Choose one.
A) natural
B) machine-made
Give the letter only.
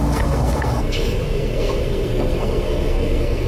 B